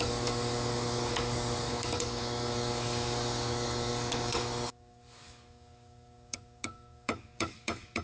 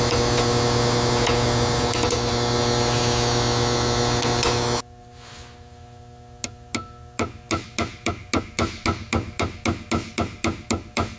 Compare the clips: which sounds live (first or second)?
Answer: second